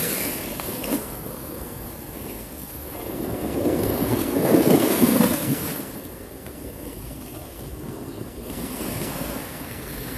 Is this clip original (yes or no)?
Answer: no